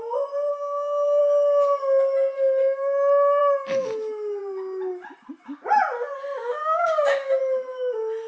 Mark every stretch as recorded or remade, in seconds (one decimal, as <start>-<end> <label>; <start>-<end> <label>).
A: 0.0-0.5 recorded; 0.5-1.2 remade; 1.2-6.5 recorded; 6.5-7.4 remade; 7.4-8.3 recorded